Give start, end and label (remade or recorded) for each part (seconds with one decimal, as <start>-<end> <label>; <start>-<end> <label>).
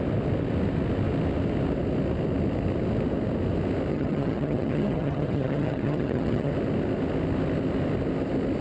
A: 0.0-3.9 recorded; 3.9-6.5 remade; 6.5-8.6 recorded